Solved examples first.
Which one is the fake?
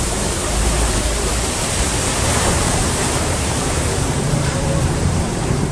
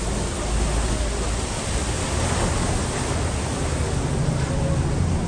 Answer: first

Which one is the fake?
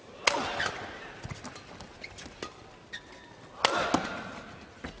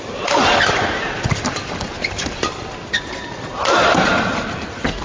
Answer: second